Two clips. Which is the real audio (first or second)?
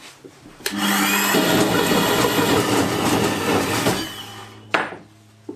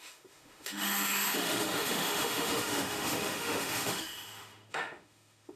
first